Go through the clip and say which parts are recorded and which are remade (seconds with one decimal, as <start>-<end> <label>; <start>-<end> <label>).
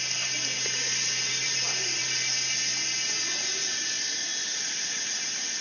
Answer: 0.0-1.3 recorded; 1.3-2.0 remade; 2.0-3.6 recorded; 3.6-4.6 remade; 4.6-5.6 recorded